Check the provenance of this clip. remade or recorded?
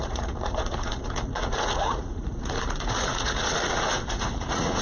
remade